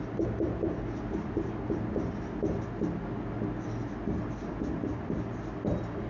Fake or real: real